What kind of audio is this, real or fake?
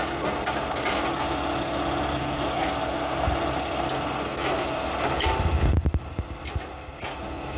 real